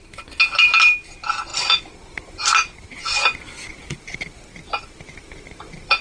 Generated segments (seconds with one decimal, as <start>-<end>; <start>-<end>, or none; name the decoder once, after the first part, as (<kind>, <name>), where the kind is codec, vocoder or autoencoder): 1.5-3.0 (vocoder, BigVGAN v2); 4.5-6.0

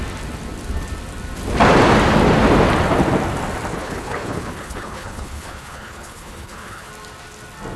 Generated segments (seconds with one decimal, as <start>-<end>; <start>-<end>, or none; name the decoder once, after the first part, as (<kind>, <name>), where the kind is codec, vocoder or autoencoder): 3.7-6.9 (codec, HILCodec)

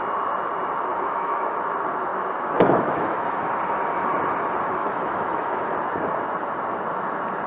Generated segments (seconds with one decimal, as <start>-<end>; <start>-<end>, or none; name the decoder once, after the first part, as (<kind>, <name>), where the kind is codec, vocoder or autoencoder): 0.9-1.4 (autoencoder, DAC-VAE); 2.1-3.5; 4.8-5.6

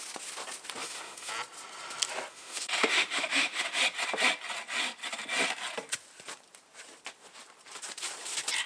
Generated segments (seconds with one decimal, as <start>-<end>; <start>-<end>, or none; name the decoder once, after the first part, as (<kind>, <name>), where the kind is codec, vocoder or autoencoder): 0.8-1.3 (autoencoder, DAC-VAE); 2.3-3.8

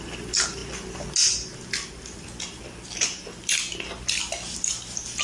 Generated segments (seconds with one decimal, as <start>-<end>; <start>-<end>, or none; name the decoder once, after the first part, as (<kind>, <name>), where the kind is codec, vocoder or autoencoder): none

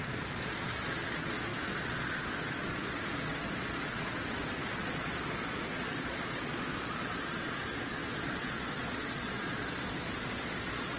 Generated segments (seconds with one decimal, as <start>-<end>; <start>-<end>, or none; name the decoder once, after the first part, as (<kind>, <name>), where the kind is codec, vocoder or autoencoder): 0.0-11.0 (vocoder, Vocos)